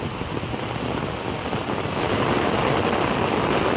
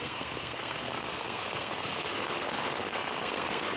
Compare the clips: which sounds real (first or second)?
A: first